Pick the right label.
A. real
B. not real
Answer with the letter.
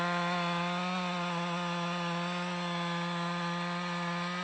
A